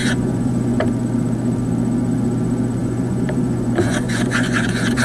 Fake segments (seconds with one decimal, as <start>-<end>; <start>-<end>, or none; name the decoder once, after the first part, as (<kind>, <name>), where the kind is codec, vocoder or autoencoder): 0.0-0.8 (vocoder, Vocos); 2.8-5.0